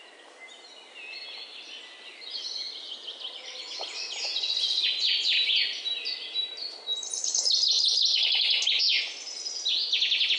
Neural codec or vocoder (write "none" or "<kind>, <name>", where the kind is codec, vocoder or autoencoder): none